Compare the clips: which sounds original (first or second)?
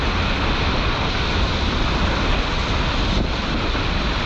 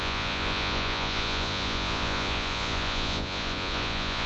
first